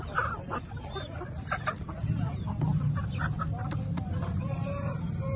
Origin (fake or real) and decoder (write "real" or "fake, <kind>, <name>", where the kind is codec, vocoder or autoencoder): fake, vocoder, BigVGAN v2